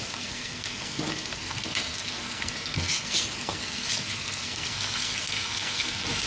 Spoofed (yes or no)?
yes